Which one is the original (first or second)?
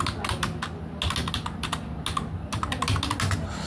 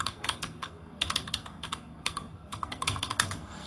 first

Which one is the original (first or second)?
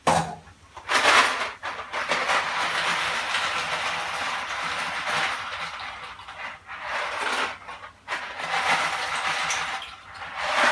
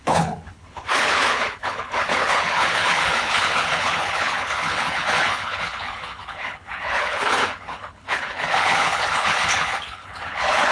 first